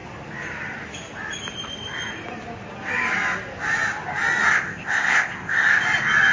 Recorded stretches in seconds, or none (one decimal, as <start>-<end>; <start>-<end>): 0.0-4.5; 5.8-6.3

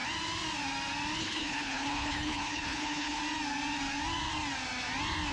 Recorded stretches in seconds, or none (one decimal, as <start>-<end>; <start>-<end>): 0.0-1.2; 3.2-5.3

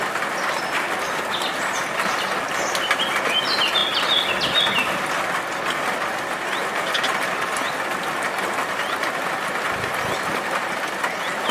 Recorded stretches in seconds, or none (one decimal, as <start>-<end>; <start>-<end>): 0.0-11.5

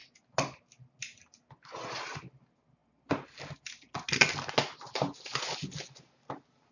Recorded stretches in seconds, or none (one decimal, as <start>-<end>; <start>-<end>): 0.0-6.7

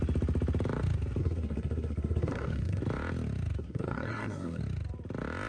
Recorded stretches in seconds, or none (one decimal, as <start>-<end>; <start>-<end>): 0.0-1.2; 2.8-3.6; 4.6-5.5

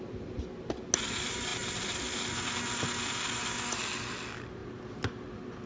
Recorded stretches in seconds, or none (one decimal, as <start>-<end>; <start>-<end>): 0.0-5.7